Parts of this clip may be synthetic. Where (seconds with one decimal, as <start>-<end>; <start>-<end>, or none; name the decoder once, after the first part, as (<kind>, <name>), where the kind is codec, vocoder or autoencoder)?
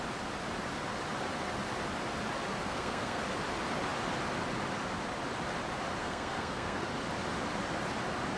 2.5-3.2 (codec, SNAC); 6.0-6.9